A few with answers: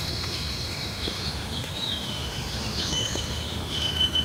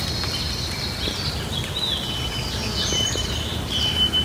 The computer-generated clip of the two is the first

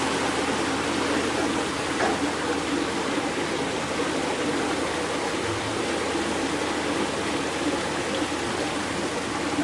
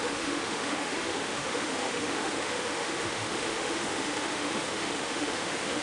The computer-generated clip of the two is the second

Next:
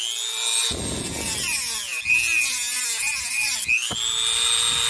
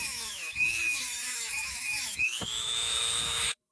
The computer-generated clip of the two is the second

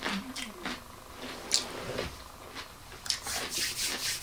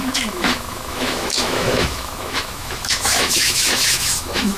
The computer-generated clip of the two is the second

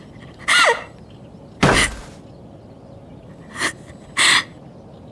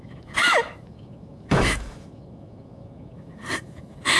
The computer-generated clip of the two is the second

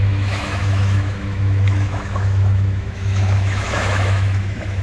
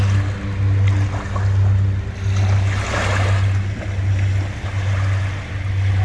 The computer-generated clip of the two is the first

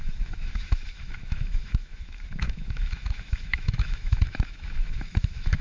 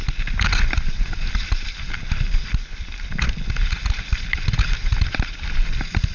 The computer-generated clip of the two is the first